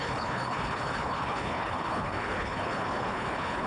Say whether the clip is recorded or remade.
remade